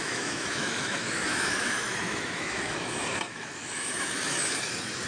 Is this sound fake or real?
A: fake